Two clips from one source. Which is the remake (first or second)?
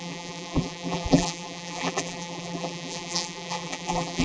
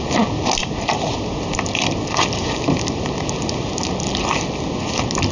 first